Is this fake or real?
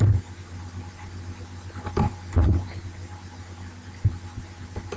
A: real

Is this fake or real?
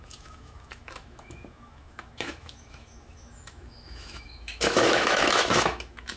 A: fake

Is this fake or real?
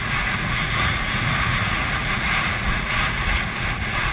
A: fake